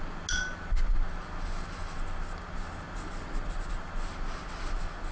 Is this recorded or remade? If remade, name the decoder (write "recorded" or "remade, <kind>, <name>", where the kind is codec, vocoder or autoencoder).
recorded